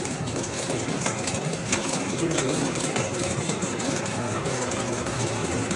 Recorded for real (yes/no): no